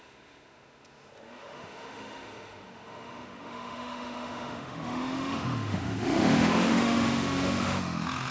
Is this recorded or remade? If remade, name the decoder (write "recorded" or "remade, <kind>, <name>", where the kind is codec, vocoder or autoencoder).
remade, autoencoder, DAC-VAE